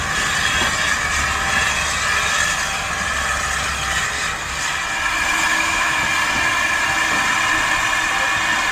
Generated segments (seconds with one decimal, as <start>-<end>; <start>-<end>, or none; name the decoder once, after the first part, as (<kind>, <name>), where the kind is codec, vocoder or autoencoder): 5.5-6.0 (autoencoder, DAC-VAE)